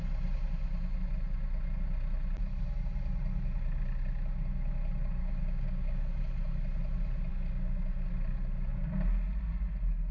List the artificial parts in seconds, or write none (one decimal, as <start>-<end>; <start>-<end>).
5.2-6.0; 7.3-8.1